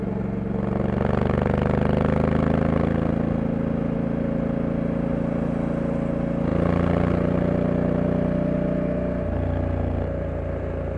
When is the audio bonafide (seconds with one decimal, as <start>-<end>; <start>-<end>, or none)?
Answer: 0.0-11.0